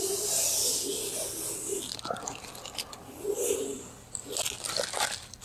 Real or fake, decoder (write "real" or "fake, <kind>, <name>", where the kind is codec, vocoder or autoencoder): real